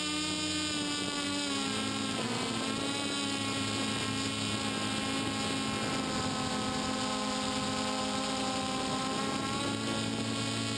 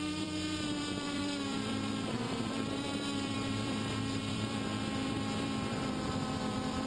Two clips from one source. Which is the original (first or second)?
first